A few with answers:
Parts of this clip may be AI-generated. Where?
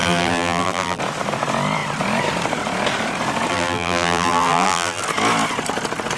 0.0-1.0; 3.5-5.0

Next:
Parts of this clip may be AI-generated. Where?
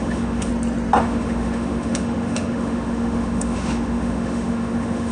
0.0-0.5; 1.0-5.1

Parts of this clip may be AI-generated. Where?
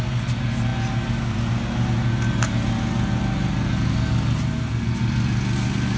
none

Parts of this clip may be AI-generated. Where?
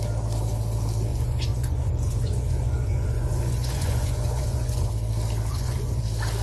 1.1-4.9; 5.5-6.0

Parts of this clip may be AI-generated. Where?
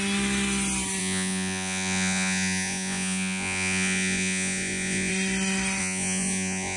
1.0-5.1; 5.8-6.8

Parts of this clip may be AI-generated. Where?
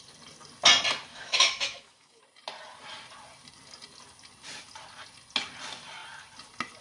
1.1-2.2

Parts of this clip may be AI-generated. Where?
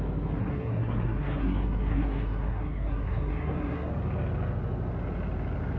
0.4-3.9